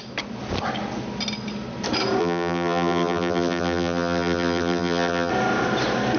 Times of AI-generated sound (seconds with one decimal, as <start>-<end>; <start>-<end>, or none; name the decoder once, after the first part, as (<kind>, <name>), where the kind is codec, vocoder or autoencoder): 2.2-5.3 (vocoder, BigVGAN v2)

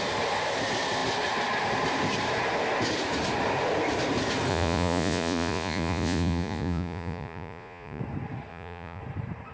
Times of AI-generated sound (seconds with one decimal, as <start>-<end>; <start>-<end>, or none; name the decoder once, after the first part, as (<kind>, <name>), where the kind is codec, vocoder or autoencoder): 4.5-8.0 (vocoder, Vocos); 8.5-9.0

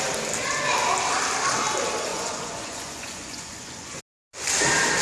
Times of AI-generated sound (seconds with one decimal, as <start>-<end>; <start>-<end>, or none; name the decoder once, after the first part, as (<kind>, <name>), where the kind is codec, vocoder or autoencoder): 2.1-4.0 (vocoder, Vocos)

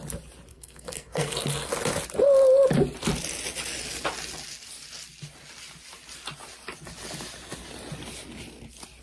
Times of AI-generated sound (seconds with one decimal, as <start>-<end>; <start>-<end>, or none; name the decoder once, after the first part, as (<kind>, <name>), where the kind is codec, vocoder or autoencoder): 0.5-1.7 (codec, SNAC)

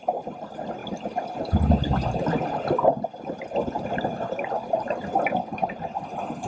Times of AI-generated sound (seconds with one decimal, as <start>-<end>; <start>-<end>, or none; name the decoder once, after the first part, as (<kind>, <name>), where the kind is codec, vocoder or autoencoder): none

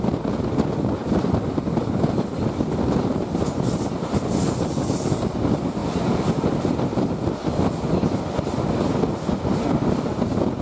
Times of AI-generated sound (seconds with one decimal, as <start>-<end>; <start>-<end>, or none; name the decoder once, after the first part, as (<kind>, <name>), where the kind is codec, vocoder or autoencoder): none

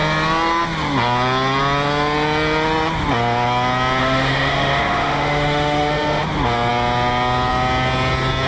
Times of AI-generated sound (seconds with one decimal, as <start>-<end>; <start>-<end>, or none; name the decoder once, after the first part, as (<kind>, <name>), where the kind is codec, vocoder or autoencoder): 4.0-6.2 (autoencoder, DAC-VAE)